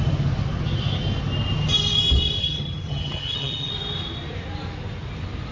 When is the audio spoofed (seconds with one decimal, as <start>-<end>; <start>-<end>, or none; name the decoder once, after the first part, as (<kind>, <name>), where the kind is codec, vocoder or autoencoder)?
2.4-3.7 (vocoder, HiFi-GAN)